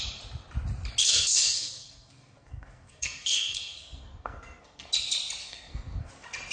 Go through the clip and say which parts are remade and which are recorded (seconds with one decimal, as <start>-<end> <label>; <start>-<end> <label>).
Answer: 0.0-1.0 recorded; 1.0-4.9 remade; 4.9-5.4 recorded; 5.4-6.1 remade; 6.1-6.5 recorded